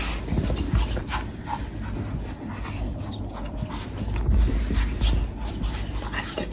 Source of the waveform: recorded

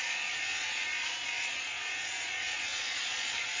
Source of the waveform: remade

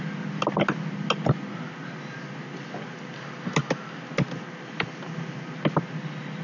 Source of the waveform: recorded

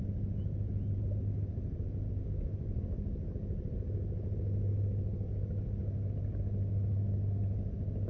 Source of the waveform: recorded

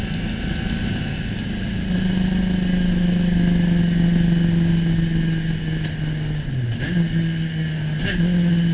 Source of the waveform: recorded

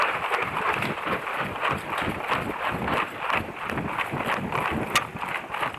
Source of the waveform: recorded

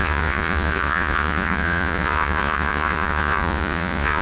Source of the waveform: remade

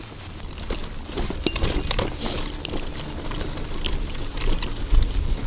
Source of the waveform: recorded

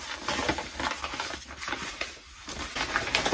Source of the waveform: recorded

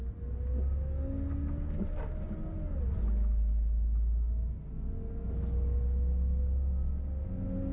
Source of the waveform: recorded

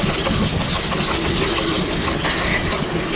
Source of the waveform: recorded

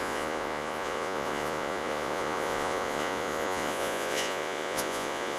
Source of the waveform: remade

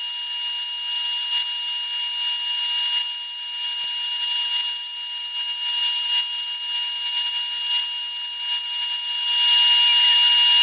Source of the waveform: recorded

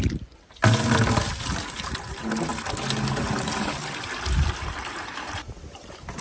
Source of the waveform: recorded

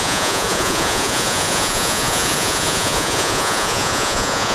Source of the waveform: remade